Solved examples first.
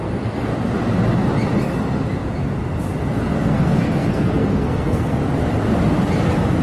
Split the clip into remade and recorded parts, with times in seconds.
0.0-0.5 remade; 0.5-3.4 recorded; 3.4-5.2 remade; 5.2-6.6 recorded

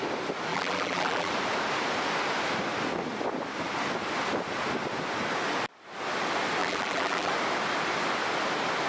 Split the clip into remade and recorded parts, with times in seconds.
0.0-0.5 recorded; 0.5-1.3 remade; 1.3-6.6 recorded; 6.6-7.3 remade; 7.3-8.9 recorded

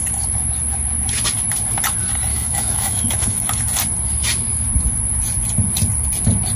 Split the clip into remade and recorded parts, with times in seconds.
0.0-2.3 recorded; 2.3-3.4 remade; 3.4-6.6 recorded